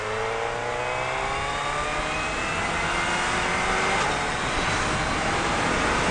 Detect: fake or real real